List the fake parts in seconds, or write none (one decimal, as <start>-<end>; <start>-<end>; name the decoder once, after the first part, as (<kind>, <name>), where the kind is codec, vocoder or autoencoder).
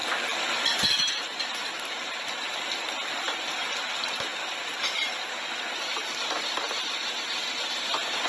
none